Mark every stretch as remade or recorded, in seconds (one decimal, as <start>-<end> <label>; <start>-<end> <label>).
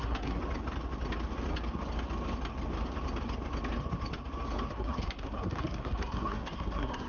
0.0-0.4 remade; 0.4-4.7 recorded; 4.7-7.1 remade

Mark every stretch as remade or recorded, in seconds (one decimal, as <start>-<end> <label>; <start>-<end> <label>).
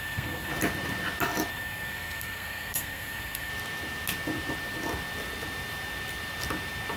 0.0-0.5 remade; 0.5-1.5 recorded; 1.5-3.5 remade; 3.5-7.0 recorded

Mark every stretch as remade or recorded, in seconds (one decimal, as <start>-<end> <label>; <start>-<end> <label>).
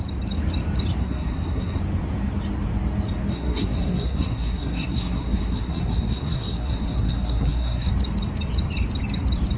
0.0-1.0 recorded; 1.0-1.8 remade; 1.8-3.3 recorded; 3.3-7.9 remade; 7.9-9.6 recorded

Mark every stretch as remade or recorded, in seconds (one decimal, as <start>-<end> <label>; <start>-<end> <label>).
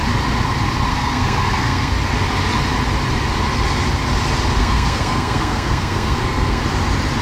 0.0-0.9 recorded; 0.9-1.9 remade; 1.9-4.6 recorded; 4.6-6.6 remade; 6.6-7.2 recorded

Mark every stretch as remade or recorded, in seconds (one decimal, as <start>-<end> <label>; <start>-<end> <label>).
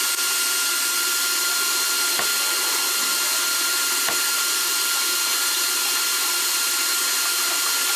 0.0-8.0 recorded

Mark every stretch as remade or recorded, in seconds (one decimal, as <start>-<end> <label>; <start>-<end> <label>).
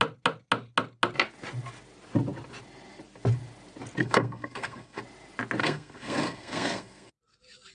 0.0-4.0 recorded; 4.0-5.0 remade; 5.0-5.6 recorded; 5.6-7.1 remade; 7.1-7.7 recorded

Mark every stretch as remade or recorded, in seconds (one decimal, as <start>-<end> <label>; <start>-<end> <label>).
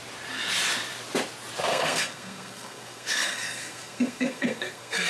0.0-1.7 recorded; 1.7-5.1 remade